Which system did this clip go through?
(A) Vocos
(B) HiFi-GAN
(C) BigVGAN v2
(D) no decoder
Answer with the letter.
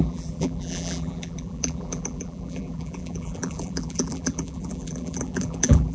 C